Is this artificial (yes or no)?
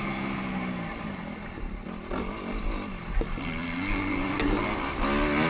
no